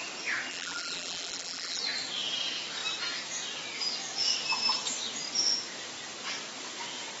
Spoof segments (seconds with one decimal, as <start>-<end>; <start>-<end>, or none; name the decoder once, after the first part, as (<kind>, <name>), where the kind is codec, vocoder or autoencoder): 0.5-1.8 (vocoder, BigVGAN v2)